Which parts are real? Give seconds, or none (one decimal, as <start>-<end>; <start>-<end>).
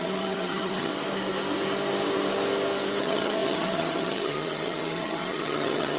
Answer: 0.9-3.0